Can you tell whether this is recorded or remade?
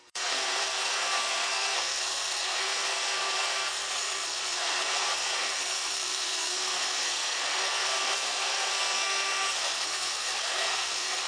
remade